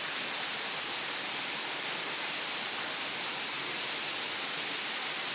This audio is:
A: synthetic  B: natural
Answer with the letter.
B